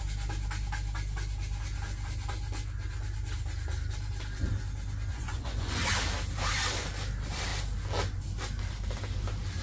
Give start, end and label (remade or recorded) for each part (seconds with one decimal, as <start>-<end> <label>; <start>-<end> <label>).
0.0-5.1 recorded; 5.1-5.8 remade; 5.8-9.6 recorded